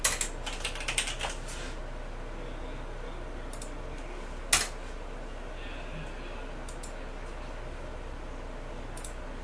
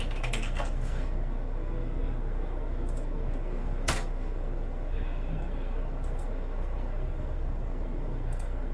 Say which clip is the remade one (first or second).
second